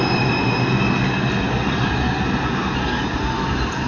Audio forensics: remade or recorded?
recorded